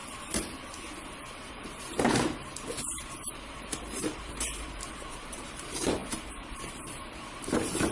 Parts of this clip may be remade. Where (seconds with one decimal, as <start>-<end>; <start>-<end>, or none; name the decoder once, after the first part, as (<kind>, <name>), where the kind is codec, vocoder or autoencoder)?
1.5-7.9 (vocoder, BigVGAN v2)